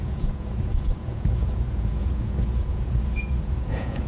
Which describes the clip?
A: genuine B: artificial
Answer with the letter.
B